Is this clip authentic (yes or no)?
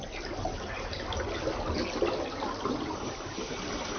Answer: yes